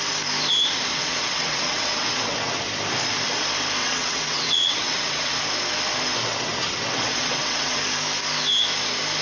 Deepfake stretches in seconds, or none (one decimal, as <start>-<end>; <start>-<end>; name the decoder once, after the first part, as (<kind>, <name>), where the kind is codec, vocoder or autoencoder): 0.9-2.6 (vocoder, WaveNeXt); 3.8-5.4; 6.2-7.8